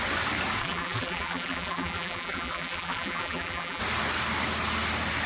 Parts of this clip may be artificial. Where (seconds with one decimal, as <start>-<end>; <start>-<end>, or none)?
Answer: 0.6-3.8